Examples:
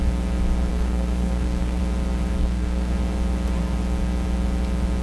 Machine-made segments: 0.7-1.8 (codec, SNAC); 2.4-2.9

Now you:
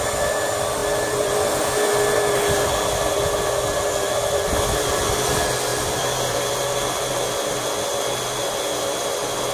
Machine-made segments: none

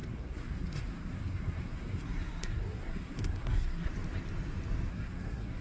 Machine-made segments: 0.0-3.9 (codec, SNAC); 4.9-5.6

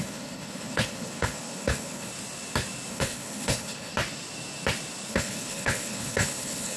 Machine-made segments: 0.0-2.1 (codec, HILCodec); 2.9-3.9; 5.1-6.8

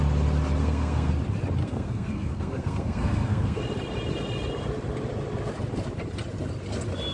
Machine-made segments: 0.6-1.1 (codec, SNAC); 1.6-3.6

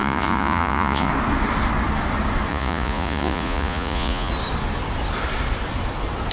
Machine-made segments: 0.0-1.1 (vocoder, Vocos); 2.5-4.3